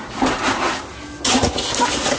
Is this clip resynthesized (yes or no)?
no